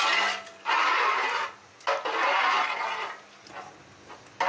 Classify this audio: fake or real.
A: real